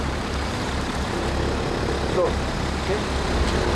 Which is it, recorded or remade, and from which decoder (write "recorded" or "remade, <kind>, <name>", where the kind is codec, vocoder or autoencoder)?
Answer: recorded